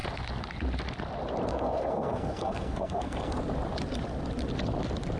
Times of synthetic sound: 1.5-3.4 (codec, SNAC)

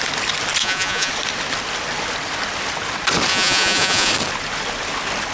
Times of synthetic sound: 0.6-1.1 (vocoder, Vocos); 3.3-4.1

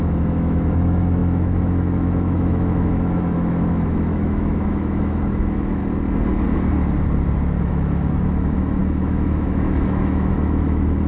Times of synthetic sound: 0.0-5.8 (autoencoder, DAC-VAE); 7.6-11.1

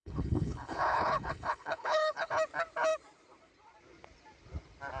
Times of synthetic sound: 0.0-2.3 (codec, HILCodec)

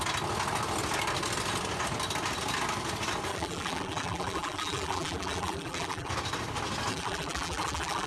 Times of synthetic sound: 3.3-6.1 (vocoder, BigVGAN v2); 6.9-8.1